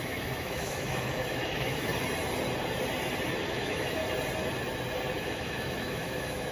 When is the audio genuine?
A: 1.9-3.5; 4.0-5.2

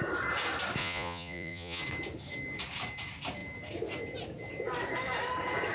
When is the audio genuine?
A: 0.0-0.8; 1.8-5.7